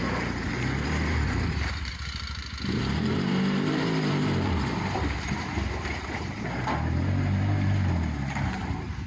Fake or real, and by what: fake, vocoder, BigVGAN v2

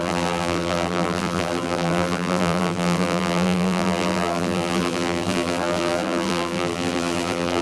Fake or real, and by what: fake, vocoder, BigVGAN v2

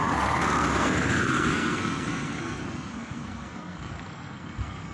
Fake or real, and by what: fake, codec, SNAC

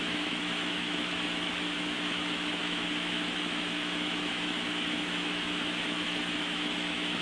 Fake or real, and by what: fake, autoencoder, DAC-VAE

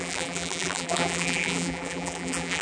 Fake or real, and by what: fake, vocoder, BigVGAN v2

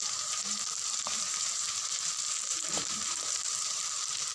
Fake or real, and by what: fake, vocoder, BigVGAN v2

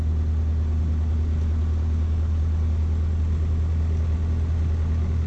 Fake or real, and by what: real